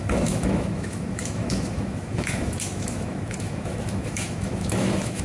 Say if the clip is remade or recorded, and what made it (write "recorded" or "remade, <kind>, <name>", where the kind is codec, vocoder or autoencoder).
remade, autoencoder, DAC-VAE